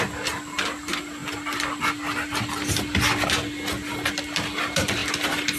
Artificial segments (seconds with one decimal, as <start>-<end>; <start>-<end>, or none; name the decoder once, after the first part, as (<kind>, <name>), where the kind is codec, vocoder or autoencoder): none